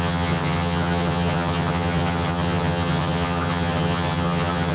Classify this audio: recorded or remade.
remade